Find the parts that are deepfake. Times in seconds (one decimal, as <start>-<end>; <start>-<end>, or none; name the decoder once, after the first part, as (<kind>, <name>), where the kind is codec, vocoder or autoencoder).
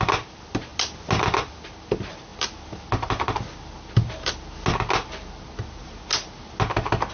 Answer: none